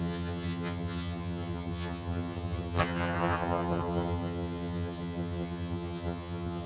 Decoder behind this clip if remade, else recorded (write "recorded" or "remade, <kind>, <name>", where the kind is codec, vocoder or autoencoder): remade, vocoder, HiFi-GAN